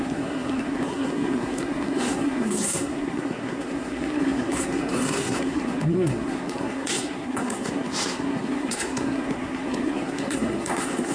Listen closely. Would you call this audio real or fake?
fake